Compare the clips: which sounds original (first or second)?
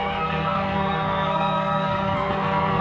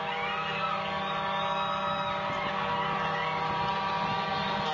second